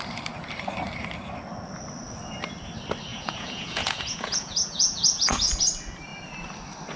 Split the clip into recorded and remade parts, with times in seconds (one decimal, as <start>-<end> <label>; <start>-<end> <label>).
0.0-3.1 recorded; 3.1-5.6 remade; 5.6-7.0 recorded